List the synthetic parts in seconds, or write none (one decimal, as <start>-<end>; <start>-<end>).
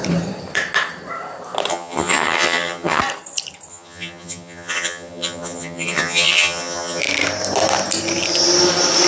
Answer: 1.7-3.0; 3.7-7.0